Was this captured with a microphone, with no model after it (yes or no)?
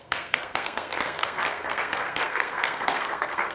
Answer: no